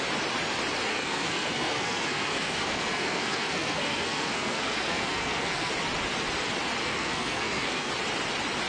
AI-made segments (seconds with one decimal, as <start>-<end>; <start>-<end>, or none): 0.9-5.7; 6.8-7.9